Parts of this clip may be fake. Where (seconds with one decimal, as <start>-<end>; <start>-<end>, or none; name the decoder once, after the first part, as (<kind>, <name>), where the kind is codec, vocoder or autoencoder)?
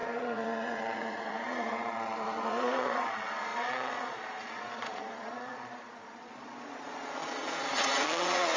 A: 0.0-8.6 (vocoder, Vocos)